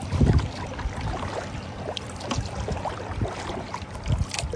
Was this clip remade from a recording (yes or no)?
no